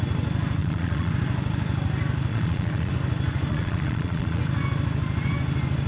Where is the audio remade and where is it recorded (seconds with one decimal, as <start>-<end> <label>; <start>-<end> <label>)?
0.0-0.6 recorded; 0.6-1.1 remade; 1.1-2.3 recorded; 2.3-2.9 remade; 2.9-3.5 recorded; 3.5-4.4 remade; 4.4-5.9 recorded